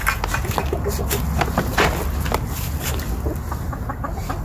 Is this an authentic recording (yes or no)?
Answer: yes